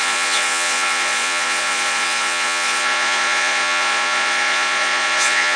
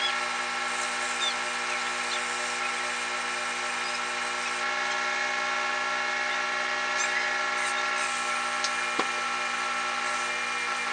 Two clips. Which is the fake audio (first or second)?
first